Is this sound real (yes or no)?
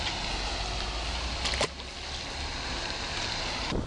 yes